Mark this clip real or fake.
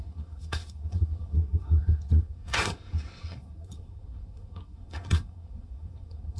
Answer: fake